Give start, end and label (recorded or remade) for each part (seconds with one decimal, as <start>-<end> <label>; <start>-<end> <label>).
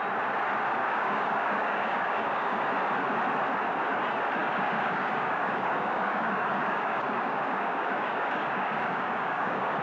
0.0-0.8 recorded; 0.8-2.6 remade; 2.6-4.4 recorded; 4.4-9.8 remade